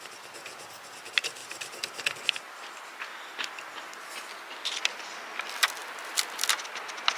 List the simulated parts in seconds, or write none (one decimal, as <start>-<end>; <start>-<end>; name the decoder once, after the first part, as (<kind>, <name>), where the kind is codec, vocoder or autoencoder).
5.8-6.7 (vocoder, BigVGAN v2)